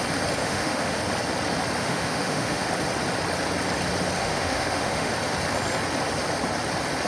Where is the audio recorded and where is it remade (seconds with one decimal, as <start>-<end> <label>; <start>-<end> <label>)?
0.0-0.4 recorded; 0.4-1.0 remade; 1.0-1.8 recorded; 1.8-2.7 remade; 2.7-4.2 recorded; 4.2-5.1 remade; 5.1-7.1 recorded